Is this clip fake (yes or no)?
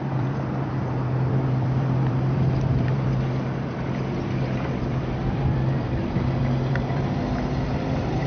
yes